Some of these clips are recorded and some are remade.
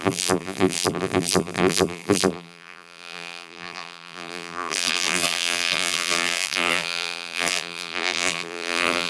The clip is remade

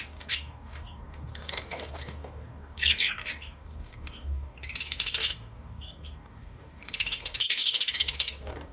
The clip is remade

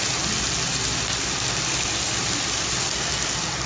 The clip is recorded